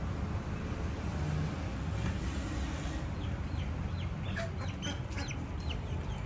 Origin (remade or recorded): recorded